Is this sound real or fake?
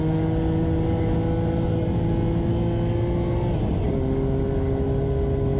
real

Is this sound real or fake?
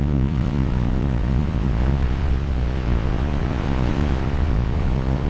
fake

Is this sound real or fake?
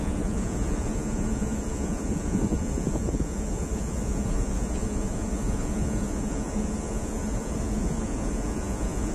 fake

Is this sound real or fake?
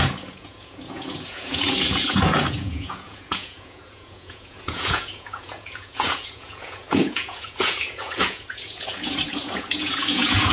fake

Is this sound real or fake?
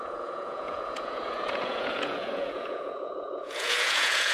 fake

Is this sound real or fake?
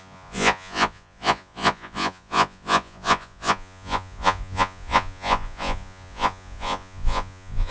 fake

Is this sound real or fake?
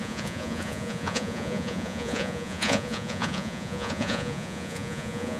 fake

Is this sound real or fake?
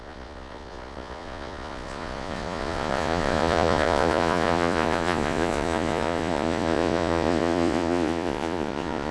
fake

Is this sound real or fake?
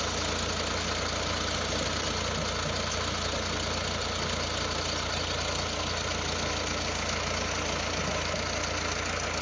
real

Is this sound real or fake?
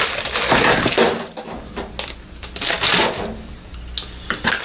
real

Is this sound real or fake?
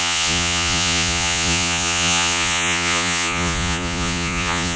fake